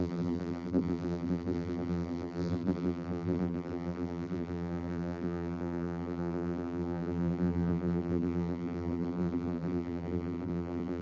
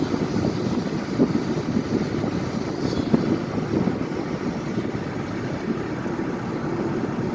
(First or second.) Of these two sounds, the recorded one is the second